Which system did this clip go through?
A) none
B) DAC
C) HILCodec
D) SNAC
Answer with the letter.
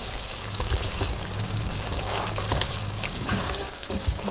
B